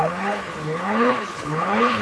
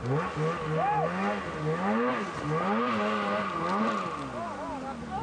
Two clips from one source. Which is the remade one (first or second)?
first